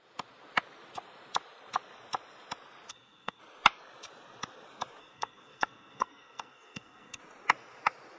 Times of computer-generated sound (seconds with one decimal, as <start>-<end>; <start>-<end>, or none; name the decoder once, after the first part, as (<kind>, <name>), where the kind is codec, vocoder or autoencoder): 2.9-3.4 (codec, SNAC); 5.0-7.2